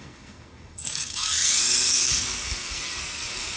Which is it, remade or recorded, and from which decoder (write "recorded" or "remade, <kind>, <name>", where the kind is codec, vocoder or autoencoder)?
remade, codec, SNAC